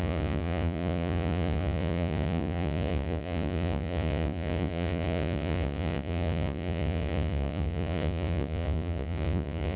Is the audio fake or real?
fake